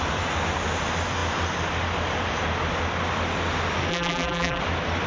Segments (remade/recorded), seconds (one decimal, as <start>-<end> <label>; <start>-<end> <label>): 0.0-3.9 recorded; 3.9-4.6 remade; 4.6-5.1 recorded